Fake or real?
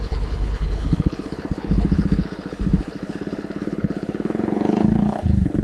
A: fake